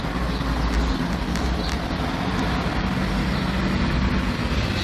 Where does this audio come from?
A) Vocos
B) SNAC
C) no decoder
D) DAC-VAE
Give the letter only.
C